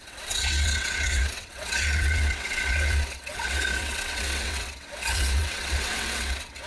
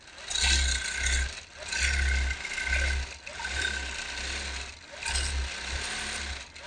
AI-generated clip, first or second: first